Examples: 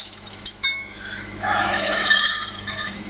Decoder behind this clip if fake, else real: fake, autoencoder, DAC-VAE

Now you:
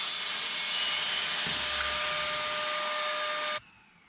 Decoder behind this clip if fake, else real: real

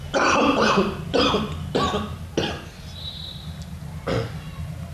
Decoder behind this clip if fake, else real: real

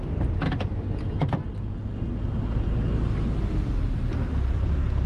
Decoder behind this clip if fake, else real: real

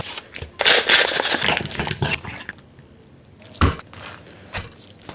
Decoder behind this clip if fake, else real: real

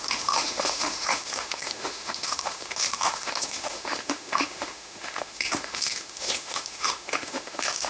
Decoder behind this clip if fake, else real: fake, autoencoder, DAC-VAE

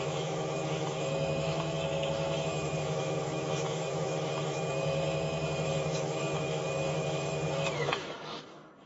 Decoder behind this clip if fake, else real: fake, autoencoder, DAC-VAE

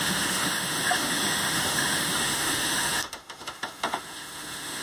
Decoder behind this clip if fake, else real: fake, autoencoder, DAC-VAE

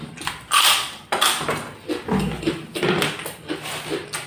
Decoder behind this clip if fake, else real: real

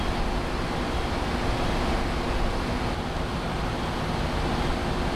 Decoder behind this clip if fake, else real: real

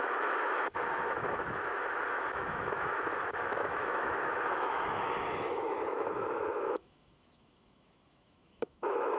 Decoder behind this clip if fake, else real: fake, autoencoder, DAC-VAE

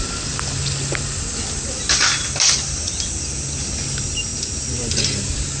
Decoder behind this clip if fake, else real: real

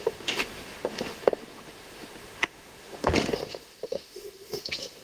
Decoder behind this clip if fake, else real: fake, autoencoder, DAC-VAE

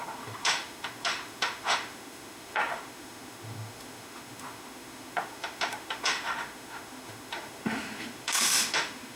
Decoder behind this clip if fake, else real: fake, autoencoder, DAC-VAE